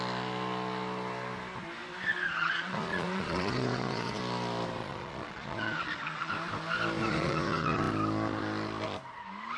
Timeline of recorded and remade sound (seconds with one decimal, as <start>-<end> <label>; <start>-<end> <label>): 0.0-2.4 recorded; 2.4-4.2 remade; 4.2-4.8 recorded; 4.8-6.3 remade; 6.3-7.0 recorded; 7.0-7.8 remade; 7.8-9.6 recorded